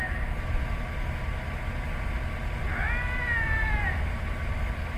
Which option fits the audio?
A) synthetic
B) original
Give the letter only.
B